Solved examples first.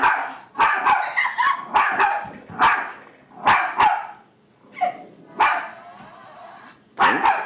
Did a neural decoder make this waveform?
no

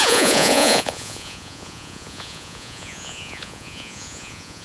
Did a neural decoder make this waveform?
yes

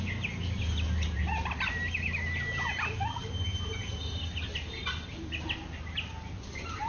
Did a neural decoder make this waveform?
no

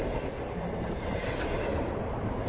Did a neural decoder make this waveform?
yes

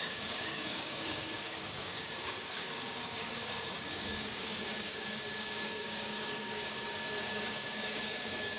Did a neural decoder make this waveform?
yes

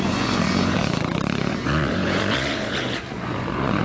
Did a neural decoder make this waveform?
yes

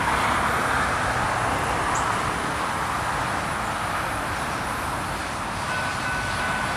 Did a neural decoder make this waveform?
no